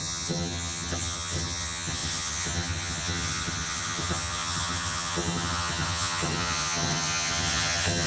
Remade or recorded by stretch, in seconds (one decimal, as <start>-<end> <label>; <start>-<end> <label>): 0.0-8.1 remade